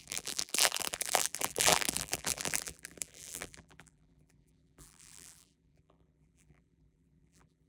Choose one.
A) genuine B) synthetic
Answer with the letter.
B